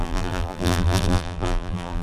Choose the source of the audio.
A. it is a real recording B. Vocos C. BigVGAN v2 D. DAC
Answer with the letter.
C